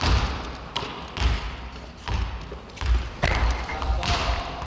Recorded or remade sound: recorded